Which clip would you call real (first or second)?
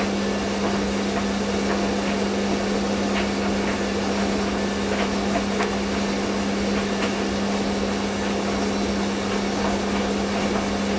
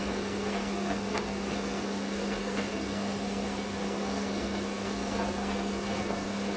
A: first